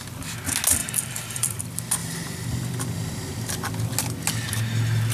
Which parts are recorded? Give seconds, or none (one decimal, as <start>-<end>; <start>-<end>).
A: 0.0-0.8; 1.6-2.0; 3.3-5.1